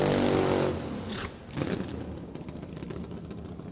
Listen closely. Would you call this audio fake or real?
real